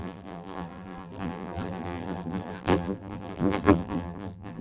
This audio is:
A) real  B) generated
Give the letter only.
B